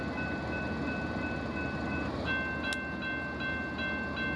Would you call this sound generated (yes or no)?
no